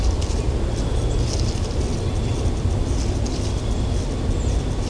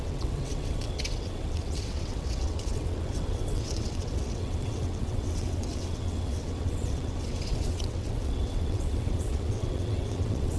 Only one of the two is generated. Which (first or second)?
second